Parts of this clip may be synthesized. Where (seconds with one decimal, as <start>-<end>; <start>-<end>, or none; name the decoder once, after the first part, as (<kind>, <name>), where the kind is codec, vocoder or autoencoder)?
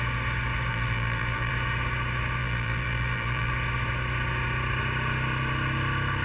0.7-1.5 (vocoder, BigVGAN v2); 2.4-3.5